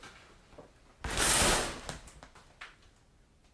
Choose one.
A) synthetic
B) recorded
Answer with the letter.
B